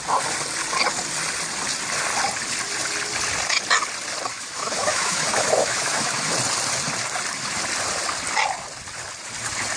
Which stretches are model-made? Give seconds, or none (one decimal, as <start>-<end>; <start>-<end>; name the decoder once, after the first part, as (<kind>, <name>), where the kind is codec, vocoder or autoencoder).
4.3-6.2 (autoencoder, DAC-VAE)